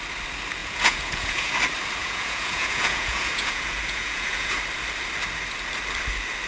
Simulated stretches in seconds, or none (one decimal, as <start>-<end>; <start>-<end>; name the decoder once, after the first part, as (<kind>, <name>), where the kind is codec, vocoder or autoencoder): 0.6-1.6 (vocoder, Vocos); 2.0-4.6